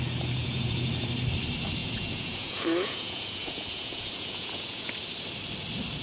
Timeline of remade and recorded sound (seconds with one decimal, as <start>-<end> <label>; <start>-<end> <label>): 0.0-0.4 recorded; 0.4-0.9 remade; 0.9-1.8 recorded; 1.8-4.9 remade; 4.9-6.0 recorded